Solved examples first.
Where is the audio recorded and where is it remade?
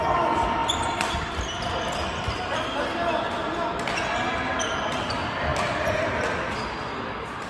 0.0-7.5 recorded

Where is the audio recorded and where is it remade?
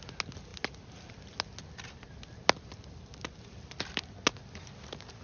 0.0-5.2 recorded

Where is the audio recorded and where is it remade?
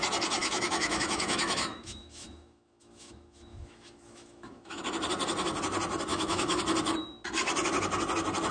0.0-0.4 recorded; 0.4-4.8 remade; 4.8-6.1 recorded; 6.1-6.6 remade; 6.6-8.5 recorded